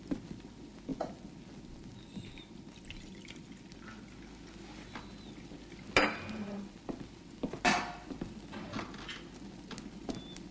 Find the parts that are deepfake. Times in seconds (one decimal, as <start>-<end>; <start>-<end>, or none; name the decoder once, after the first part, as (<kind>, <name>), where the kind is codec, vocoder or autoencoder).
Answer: none